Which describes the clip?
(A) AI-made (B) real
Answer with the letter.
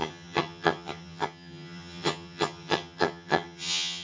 A